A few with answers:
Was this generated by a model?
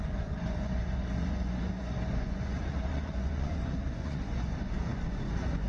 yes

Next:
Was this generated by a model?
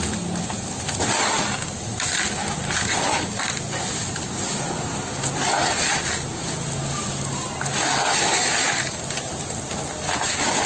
no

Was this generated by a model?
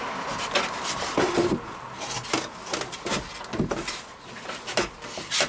no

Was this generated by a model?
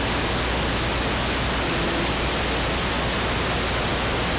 no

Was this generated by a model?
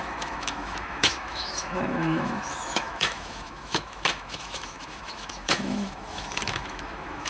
yes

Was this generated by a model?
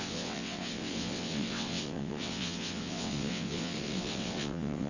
yes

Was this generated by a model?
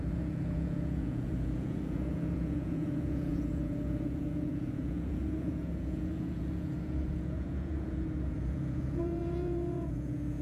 yes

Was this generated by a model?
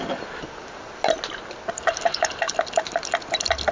no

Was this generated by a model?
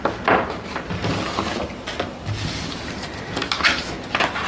no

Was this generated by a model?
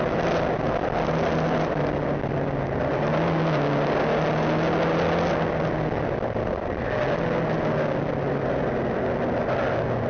no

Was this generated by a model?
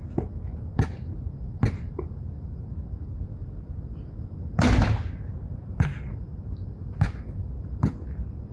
no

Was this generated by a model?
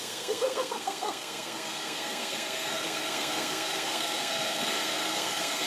yes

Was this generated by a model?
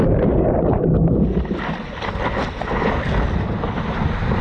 no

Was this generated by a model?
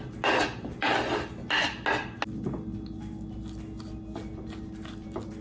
no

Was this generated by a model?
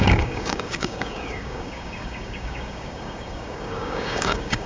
yes